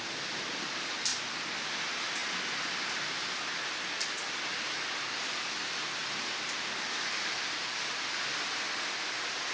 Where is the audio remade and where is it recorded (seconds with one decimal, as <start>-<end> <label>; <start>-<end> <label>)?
0.0-1.1 recorded; 1.1-1.7 remade; 1.7-6.0 recorded; 6.0-9.5 remade